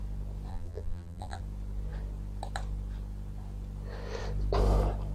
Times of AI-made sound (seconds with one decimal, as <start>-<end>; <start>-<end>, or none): 0.5-1.4